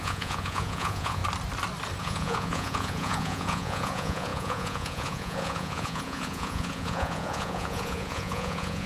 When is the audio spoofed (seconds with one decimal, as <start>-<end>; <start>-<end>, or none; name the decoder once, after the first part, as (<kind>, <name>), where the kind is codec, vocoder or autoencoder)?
0.0-1.2 (vocoder, Vocos); 2.0-8.9